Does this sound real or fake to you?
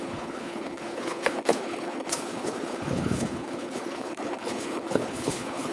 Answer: fake